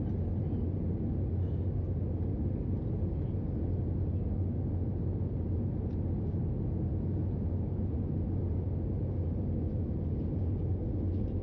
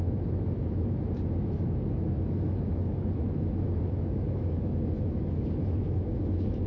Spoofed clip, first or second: second